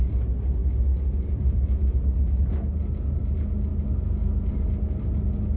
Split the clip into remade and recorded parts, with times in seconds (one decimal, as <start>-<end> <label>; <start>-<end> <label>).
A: 0.0-5.6 recorded